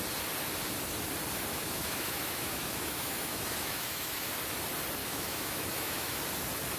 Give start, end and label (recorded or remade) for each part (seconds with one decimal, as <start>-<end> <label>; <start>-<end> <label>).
0.0-1.5 recorded; 1.5-4.3 remade; 4.3-5.0 recorded; 5.0-6.2 remade; 6.2-6.8 recorded